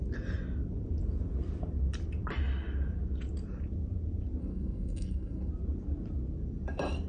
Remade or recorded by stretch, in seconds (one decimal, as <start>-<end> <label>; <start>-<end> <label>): 0.0-4.4 recorded; 4.4-5.5 remade; 5.5-7.1 recorded